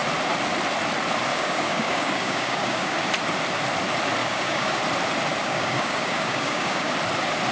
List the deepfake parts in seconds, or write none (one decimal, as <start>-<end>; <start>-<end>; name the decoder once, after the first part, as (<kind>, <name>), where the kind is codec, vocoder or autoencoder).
1.3-3.1 (codec, DAC); 4.2-4.8; 5.4-6.9